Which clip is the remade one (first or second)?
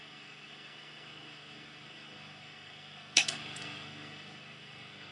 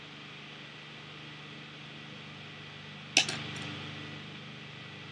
first